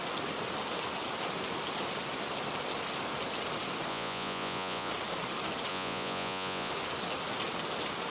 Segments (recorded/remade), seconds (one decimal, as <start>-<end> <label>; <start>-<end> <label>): 0.0-3.9 recorded; 3.9-4.9 remade; 4.9-5.7 recorded; 5.7-6.7 remade; 6.7-8.1 recorded